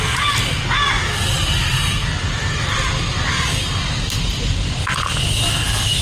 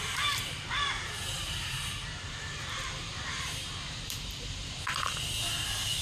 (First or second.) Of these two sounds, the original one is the first